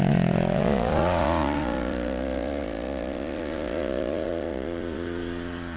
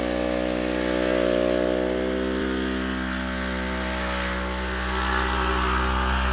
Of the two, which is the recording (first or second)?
second